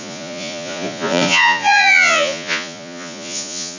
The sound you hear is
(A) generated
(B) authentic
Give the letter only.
A